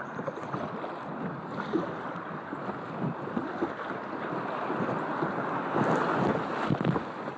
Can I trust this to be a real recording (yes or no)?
yes